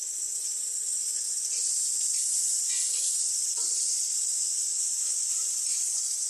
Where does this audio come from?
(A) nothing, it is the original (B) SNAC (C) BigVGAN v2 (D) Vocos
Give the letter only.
C